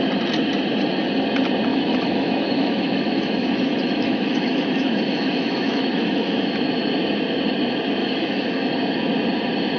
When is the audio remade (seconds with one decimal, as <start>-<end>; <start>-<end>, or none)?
1.7-6.5; 8.0-8.7